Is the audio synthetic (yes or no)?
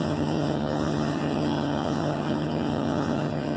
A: yes